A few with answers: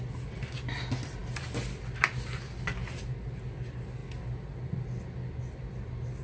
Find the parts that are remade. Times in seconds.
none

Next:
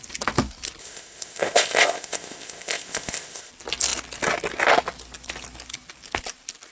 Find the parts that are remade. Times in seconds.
0.8-3.5 (codec, ZipCodec)

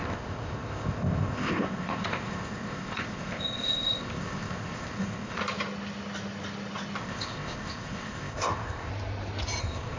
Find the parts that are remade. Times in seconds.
0.0-5.4 (codec, ZipCodec); 7.0-8.9; 9.6-10.0

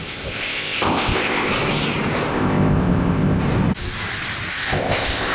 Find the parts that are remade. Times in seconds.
0.0-1.5 (codec, ZipCodec); 2.3-3.4; 4.5-5.3

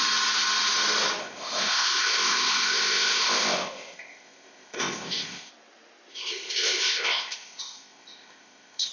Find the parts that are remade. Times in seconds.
1.2-5.5 (codec, ZipCodec); 6.1-8.9